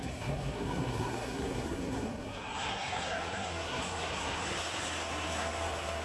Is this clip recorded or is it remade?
remade